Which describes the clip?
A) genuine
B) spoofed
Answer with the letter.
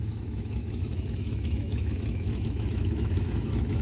B